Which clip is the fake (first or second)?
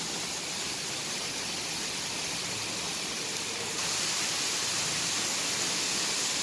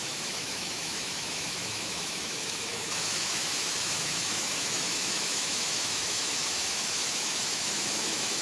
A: second